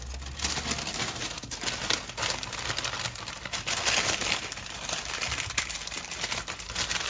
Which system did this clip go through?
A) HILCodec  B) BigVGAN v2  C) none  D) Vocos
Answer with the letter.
C